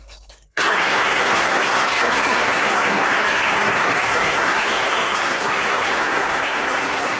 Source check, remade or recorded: remade